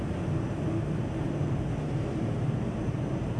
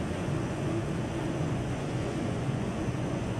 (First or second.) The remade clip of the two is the second